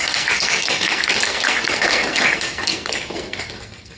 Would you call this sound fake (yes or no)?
yes